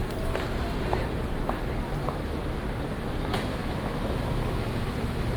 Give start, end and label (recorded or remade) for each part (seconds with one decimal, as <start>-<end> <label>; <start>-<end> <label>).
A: 0.0-3.5 recorded; 3.5-5.4 remade